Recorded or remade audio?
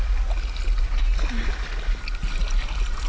recorded